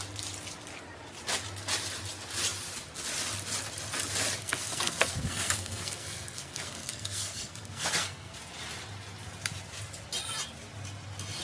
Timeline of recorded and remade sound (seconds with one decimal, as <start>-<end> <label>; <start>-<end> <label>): 0.0-4.4 recorded; 4.4-8.4 remade; 8.4-11.4 recorded